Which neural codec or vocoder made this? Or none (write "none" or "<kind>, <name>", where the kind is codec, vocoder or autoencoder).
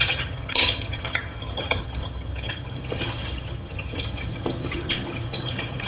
vocoder, HiFi-GAN